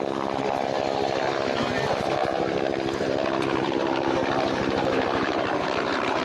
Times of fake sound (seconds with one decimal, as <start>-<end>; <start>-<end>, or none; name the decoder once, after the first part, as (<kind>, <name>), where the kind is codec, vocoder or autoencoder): 2.2-6.2 (vocoder, BigVGAN v2)